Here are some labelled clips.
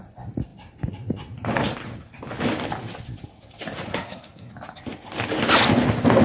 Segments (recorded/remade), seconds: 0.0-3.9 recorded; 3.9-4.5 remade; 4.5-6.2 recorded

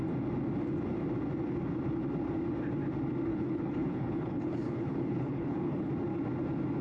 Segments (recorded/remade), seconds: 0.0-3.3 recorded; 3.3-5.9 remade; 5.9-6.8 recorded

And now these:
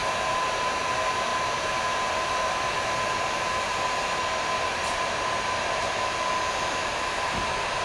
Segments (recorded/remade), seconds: 0.0-0.8 remade; 0.8-1.3 recorded; 1.3-6.0 remade; 6.0-7.8 recorded

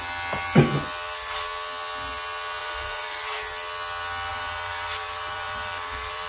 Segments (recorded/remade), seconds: 0.0-2.6 recorded; 2.6-3.4 remade; 3.4-4.3 recorded; 4.3-6.3 remade

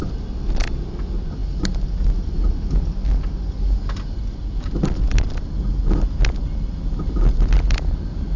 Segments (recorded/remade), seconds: 0.0-8.4 recorded